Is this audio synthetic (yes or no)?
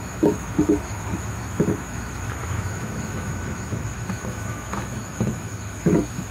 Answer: yes